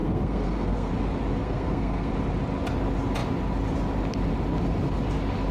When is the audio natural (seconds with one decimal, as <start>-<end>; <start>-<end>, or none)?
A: 0.9-1.4; 2.1-5.5